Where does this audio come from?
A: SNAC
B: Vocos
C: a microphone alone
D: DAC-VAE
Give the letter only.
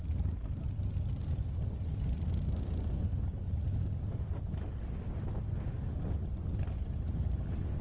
C